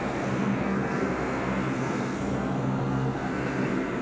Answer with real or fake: fake